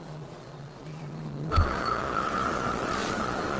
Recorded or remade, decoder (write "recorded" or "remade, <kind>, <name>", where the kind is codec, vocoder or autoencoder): remade, vocoder, Vocos